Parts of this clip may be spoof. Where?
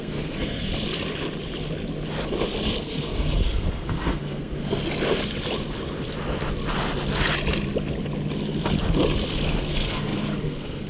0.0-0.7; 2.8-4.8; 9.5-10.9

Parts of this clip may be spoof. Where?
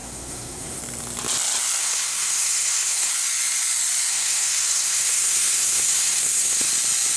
0.0-0.8; 1.8-3.1; 4.1-6.7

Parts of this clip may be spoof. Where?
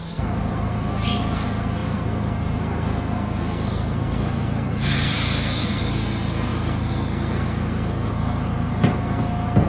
0.0-9.7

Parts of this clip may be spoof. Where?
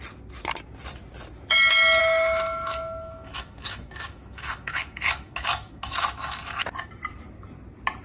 2.0-6.6